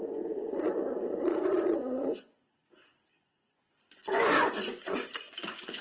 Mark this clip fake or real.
fake